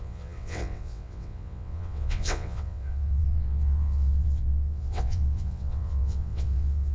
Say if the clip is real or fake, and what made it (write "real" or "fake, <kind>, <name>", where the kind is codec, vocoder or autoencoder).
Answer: fake, vocoder, WaveNeXt